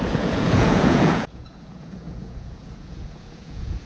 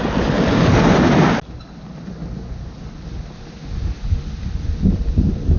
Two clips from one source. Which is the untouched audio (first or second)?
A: second